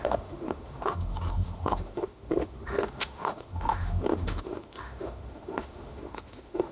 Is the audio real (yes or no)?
no